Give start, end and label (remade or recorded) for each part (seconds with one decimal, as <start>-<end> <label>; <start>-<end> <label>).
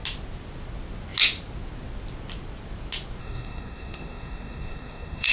0.0-3.2 recorded; 3.2-5.3 remade